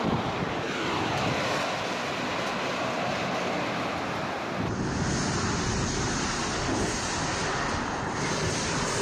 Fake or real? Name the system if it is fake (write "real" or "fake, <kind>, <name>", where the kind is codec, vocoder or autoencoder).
real